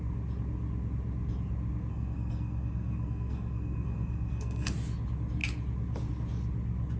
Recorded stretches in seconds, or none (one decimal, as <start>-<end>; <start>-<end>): 0.0-1.9; 4.7-7.0